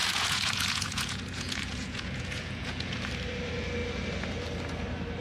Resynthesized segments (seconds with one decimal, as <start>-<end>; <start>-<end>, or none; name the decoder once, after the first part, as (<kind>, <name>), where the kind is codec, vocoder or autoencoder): 0.0-3.1 (vocoder, Vocos)